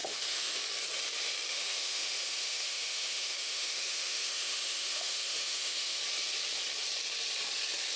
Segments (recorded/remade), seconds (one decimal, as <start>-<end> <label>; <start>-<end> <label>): 0.0-0.6 remade; 0.6-1.5 recorded; 1.5-6.0 remade; 6.0-8.0 recorded